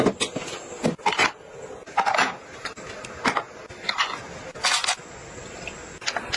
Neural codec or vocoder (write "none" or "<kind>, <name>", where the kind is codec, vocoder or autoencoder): none